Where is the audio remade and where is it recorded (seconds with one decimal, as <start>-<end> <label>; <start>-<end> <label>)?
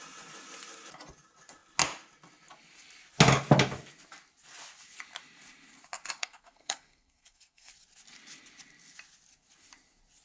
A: 0.0-6.2 recorded; 6.2-7.7 remade; 7.7-10.2 recorded